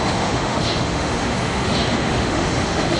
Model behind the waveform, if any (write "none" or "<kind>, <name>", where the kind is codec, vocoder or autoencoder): autoencoder, DAC-VAE